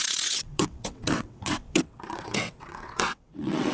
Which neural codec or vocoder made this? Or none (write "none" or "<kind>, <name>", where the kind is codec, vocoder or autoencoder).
vocoder, WaveNeXt